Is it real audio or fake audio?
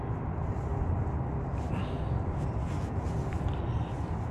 real